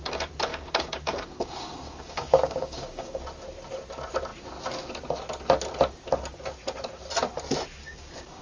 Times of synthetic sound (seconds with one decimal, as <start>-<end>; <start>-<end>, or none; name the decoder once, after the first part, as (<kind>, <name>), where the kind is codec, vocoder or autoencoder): 0.5-3.2 (codec, DAC); 7.8-8.4